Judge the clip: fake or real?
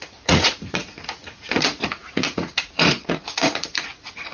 fake